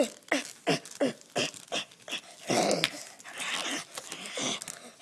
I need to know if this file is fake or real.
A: real